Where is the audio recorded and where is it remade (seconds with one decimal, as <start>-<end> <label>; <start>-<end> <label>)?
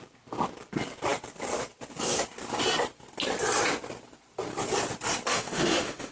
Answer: 0.0-5.3 recorded; 5.3-6.1 remade